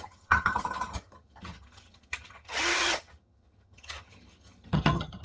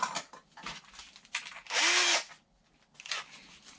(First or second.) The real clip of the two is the second